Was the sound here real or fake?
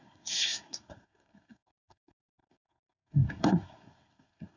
fake